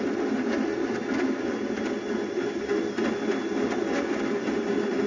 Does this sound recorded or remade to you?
recorded